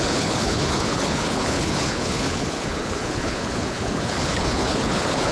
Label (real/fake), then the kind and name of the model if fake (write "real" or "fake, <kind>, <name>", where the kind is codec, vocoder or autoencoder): fake, codec, HILCodec